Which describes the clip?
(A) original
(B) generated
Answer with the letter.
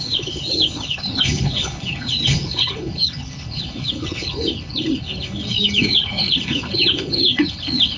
B